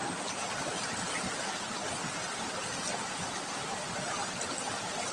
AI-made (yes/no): no